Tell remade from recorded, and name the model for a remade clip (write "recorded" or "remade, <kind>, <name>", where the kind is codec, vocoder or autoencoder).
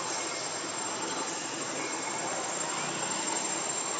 recorded